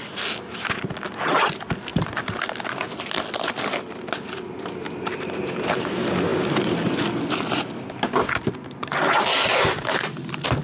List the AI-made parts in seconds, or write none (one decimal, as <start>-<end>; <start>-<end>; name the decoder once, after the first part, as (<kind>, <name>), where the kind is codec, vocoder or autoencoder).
none